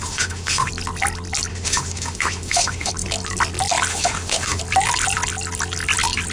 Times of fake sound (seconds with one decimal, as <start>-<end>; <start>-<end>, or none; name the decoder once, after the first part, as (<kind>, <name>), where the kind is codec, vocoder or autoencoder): 0.0-0.7 (autoencoder, DAC-VAE); 1.5-2.9; 3.9-4.6